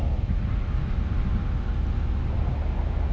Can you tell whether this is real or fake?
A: real